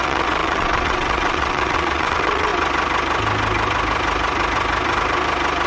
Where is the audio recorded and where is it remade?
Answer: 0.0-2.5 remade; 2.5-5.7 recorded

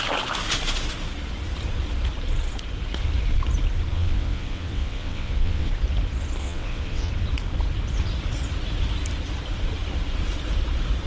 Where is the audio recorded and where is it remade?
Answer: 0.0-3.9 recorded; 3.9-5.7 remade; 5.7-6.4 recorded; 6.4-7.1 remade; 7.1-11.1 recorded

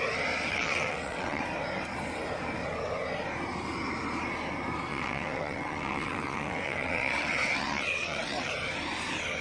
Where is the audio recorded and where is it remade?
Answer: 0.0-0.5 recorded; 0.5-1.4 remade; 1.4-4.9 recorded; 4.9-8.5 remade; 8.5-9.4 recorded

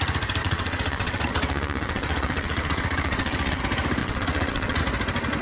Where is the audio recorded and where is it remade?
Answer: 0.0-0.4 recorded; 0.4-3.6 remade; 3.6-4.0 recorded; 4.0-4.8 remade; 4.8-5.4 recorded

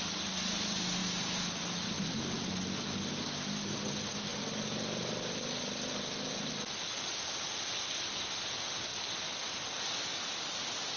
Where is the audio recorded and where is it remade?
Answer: 0.0-11.0 recorded